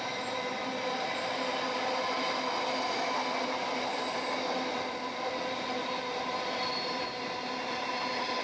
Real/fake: real